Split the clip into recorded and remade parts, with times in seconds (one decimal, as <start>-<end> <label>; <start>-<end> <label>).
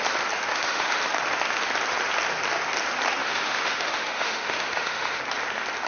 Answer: 0.0-0.5 recorded; 0.5-1.0 remade; 1.0-3.2 recorded; 3.2-5.2 remade; 5.2-5.9 recorded